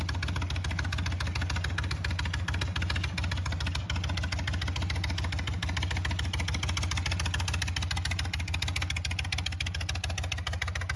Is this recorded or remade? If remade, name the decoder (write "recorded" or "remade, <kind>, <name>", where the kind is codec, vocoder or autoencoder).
recorded